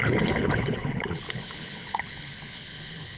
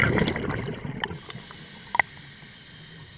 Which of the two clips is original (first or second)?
second